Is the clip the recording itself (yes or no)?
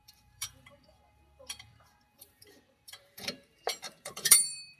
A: no